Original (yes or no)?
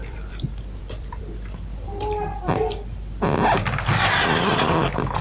no